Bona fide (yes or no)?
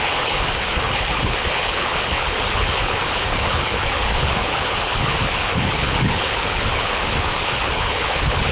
no